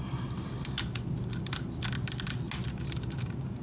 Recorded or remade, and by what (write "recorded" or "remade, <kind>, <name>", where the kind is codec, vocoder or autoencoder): recorded